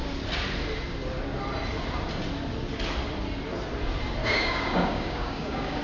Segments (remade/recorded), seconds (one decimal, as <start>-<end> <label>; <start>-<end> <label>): 0.0-4.2 recorded; 4.2-5.8 remade